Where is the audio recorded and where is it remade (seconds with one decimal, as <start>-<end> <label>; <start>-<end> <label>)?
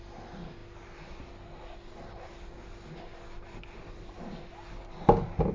0.0-5.5 recorded